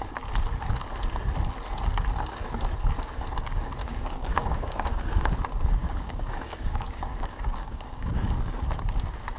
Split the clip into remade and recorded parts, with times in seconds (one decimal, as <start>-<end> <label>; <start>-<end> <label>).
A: 0.0-3.8 recorded; 3.8-5.3 remade; 5.3-5.8 recorded; 5.8-8.1 remade; 8.1-9.4 recorded